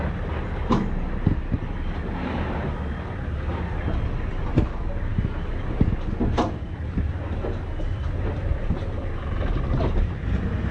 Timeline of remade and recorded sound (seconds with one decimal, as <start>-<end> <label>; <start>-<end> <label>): 0.0-10.7 recorded